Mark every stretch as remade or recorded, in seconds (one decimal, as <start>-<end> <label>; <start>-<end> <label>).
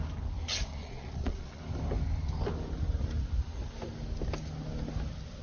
0.0-0.7 recorded; 0.7-1.6 remade; 1.6-5.4 recorded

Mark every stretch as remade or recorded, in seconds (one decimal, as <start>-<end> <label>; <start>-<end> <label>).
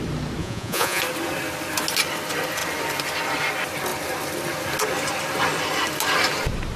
0.0-0.4 recorded; 0.4-1.0 remade; 1.0-6.8 recorded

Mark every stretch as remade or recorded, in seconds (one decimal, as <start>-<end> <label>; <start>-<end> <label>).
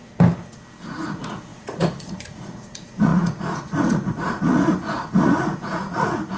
0.0-0.8 recorded; 0.8-6.4 remade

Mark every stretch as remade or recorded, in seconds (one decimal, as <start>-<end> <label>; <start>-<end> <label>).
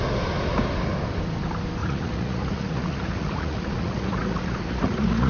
0.0-1.8 recorded; 1.8-5.3 remade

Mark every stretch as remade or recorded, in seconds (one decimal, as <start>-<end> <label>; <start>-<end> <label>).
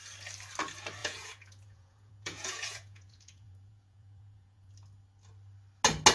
0.0-1.0 recorded; 1.0-4.7 remade; 4.7-6.1 recorded